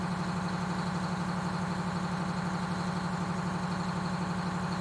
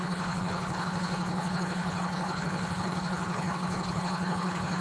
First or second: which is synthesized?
second